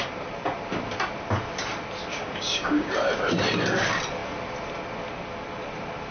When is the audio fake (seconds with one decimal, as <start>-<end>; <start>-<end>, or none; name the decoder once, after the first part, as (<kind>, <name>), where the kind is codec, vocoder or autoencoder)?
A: 2.1-2.9 (codec, DAC)